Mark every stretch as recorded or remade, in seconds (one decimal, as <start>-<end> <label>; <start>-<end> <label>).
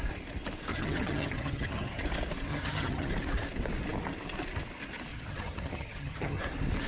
0.0-0.7 recorded; 0.7-2.0 remade; 2.0-2.5 recorded; 2.5-3.1 remade; 3.1-5.1 recorded; 5.1-6.4 remade; 6.4-6.9 recorded